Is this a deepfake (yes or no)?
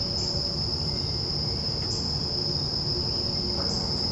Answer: no